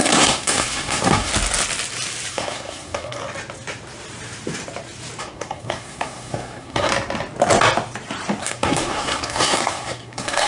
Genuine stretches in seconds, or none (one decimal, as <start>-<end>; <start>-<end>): 1.3-2.3; 3.2-5.2; 6.9-8.4